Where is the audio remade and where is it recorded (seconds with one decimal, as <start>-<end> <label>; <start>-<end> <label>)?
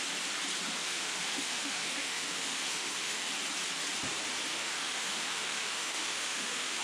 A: 0.0-0.8 recorded; 0.8-3.3 remade; 3.3-4.5 recorded; 4.5-6.8 remade